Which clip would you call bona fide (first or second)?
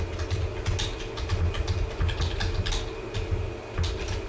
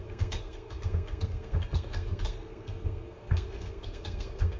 first